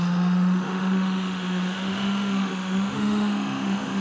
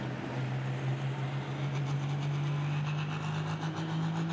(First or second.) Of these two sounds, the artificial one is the first